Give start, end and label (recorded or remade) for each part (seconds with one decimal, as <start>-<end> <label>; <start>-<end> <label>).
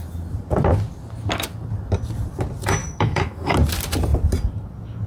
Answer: 0.0-2.8 recorded; 2.8-3.5 remade; 3.5-5.1 recorded